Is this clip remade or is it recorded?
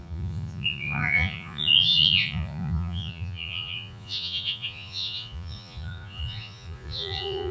remade